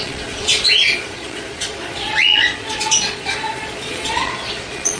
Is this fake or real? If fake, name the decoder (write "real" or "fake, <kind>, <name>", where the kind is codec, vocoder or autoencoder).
fake, vocoder, Vocos